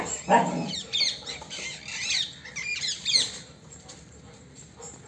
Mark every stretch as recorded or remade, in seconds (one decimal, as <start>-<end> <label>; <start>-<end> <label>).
0.0-5.1 recorded